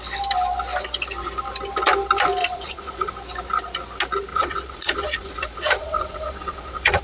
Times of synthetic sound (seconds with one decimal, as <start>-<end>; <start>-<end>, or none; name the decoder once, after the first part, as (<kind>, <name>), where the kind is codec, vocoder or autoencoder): 2.4-3.1 (vocoder, Vocos); 4.3-7.0